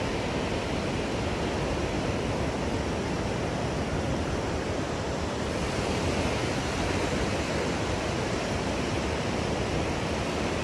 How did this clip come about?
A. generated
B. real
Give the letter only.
B